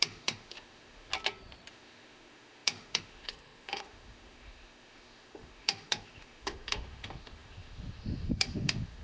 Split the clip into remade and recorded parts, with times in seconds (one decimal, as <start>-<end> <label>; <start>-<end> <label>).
0.0-1.1 remade; 1.1-1.7 recorded; 1.7-9.0 remade